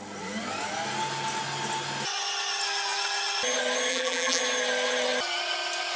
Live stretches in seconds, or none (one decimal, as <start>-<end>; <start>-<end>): 0.0-3.9; 4.4-6.0